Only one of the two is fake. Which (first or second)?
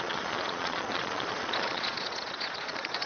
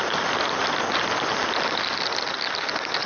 first